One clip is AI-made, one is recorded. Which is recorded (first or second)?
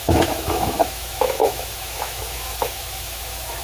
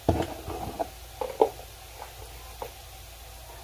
second